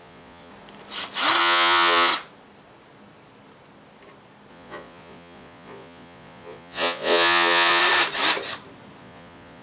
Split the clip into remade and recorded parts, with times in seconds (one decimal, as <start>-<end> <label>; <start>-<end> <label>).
0.0-0.5 remade; 0.5-1.4 recorded; 1.4-2.1 remade; 2.1-4.5 recorded; 4.5-7.8 remade; 7.8-9.0 recorded; 9.0-9.6 remade